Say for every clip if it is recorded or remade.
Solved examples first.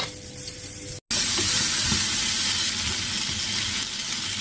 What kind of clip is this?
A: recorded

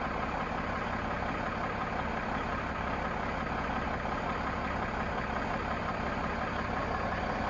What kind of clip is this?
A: recorded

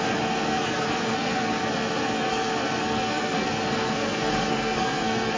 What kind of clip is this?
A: remade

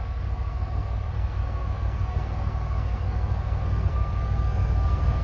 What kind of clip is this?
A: remade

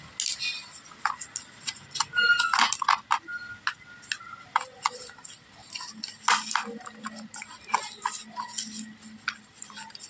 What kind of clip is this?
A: recorded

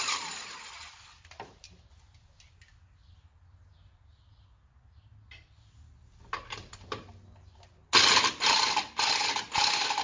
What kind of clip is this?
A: recorded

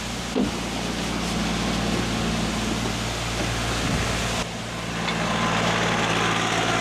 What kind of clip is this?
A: recorded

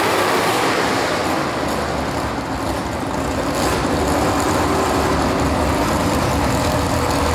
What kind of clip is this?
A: recorded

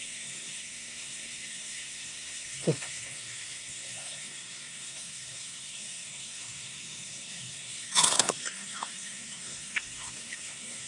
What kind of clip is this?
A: remade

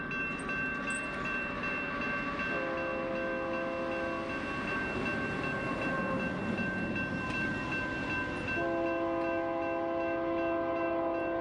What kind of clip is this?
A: recorded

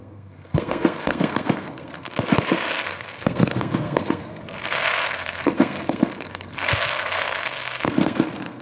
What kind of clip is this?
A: remade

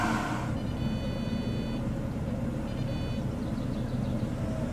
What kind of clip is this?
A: recorded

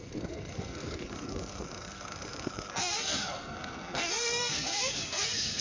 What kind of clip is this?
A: remade